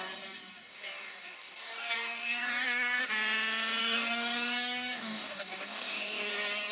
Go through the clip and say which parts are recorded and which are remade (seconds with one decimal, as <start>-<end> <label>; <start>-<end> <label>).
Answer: 0.0-0.7 recorded; 0.7-3.0 remade; 3.0-3.8 recorded; 3.8-6.3 remade; 6.3-6.7 recorded